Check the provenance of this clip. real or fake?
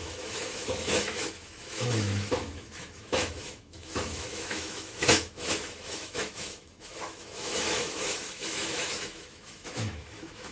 fake